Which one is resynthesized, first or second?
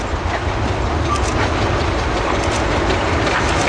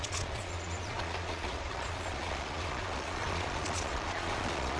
second